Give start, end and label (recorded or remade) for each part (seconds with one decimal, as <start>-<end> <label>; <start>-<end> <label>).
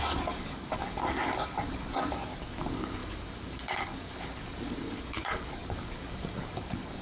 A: 0.0-7.0 remade